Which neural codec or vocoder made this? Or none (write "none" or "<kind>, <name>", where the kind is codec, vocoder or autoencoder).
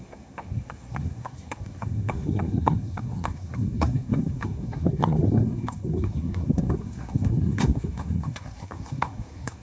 codec, SNAC